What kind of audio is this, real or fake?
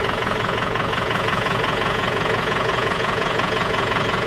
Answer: fake